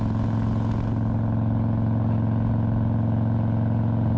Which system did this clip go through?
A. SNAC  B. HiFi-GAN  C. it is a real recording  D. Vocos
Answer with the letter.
C